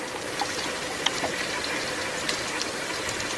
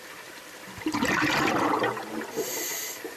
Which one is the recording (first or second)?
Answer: first